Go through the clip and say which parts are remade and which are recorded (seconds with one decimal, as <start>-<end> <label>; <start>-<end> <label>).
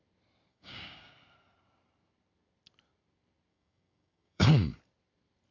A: 0.0-0.5 recorded; 0.5-1.1 remade; 1.1-3.5 recorded; 3.5-4.8 remade; 4.8-5.5 recorded